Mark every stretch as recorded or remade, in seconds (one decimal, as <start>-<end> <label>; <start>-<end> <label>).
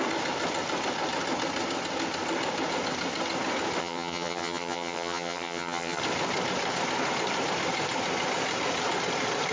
0.0-3.8 recorded; 3.8-6.0 remade; 6.0-9.5 recorded